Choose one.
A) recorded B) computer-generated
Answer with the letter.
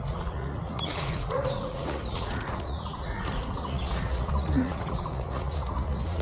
B